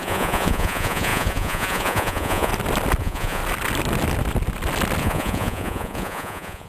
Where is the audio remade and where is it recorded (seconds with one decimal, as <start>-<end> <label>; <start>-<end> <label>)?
0.0-2.5 remade; 2.5-3.0 recorded; 3.0-3.4 remade; 3.4-5.0 recorded; 5.0-6.7 remade